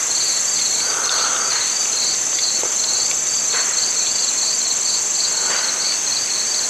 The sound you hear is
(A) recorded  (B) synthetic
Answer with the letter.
A